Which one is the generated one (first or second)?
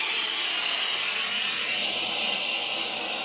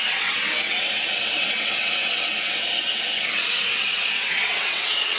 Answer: second